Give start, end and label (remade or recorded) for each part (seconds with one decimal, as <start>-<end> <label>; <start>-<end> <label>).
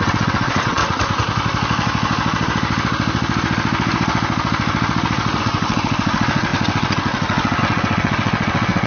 0.0-0.8 remade; 0.8-5.4 recorded; 5.4-8.9 remade